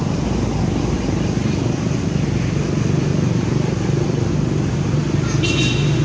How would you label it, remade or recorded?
recorded